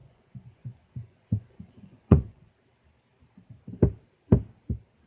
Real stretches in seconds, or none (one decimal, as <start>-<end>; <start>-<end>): 2.5-5.1